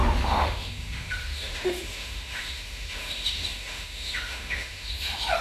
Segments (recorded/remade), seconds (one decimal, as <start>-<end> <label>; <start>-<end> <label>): 0.0-5.4 remade